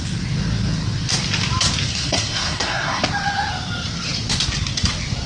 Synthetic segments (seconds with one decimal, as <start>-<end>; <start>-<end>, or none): 1.9-3.0